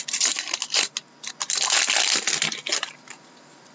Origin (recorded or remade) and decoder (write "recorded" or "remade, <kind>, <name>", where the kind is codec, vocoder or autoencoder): recorded